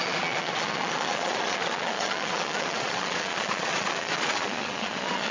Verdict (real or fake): fake